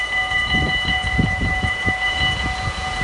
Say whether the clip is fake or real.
fake